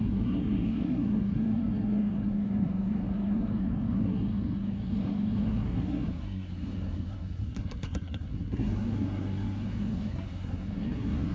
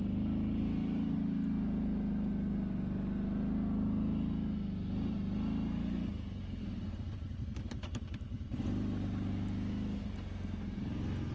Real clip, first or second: second